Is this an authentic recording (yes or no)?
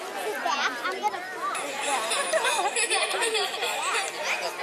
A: yes